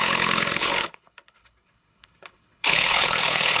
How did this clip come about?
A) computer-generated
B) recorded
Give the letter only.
A